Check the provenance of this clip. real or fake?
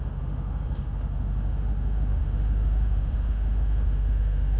fake